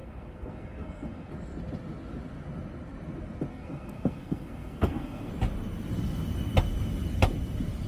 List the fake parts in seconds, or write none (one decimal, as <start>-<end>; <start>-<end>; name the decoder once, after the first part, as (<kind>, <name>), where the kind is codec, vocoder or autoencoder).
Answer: 0.0-1.3 (codec, SNAC); 3.5-5.3

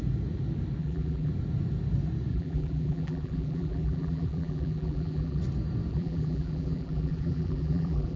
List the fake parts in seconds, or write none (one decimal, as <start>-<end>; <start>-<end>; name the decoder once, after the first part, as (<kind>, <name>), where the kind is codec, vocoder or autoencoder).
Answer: 0.8-1.3 (vocoder, BigVGAN v2); 2.3-5.4; 5.9-8.2

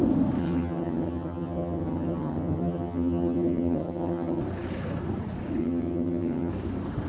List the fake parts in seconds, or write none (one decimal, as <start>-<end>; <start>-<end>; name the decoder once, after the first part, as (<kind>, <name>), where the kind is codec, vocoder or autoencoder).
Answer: 0.4-4.4 (vocoder, HiFi-GAN); 5.6-6.5

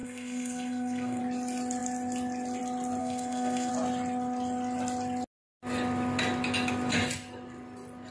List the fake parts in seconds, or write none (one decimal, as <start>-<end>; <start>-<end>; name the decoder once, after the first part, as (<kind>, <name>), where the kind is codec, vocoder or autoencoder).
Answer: 0.0-1.2 (codec, SNAC); 3.0-3.7

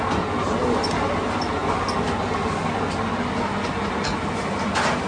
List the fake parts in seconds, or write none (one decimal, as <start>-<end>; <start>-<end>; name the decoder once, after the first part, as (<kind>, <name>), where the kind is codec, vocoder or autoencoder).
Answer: none